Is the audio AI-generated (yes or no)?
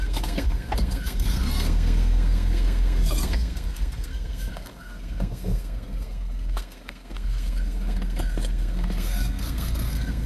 yes